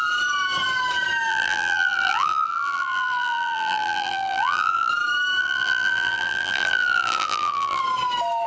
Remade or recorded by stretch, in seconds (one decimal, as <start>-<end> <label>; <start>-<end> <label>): 0.0-1.3 recorded; 1.3-4.9 remade; 4.9-5.4 recorded; 5.4-7.8 remade; 7.8-8.5 recorded